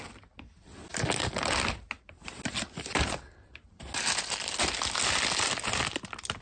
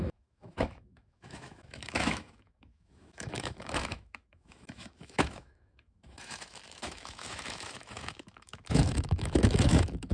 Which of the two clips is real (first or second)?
first